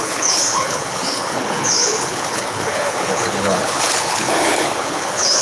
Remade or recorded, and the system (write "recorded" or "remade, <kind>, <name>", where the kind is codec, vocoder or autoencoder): remade, codec, HILCodec